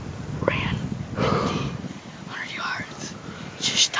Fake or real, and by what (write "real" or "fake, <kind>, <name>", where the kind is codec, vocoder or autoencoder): real